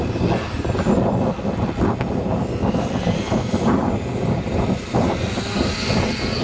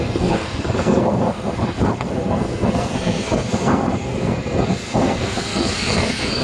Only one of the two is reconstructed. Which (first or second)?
second